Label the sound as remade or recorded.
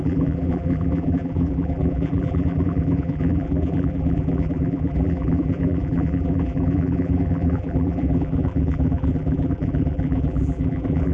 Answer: remade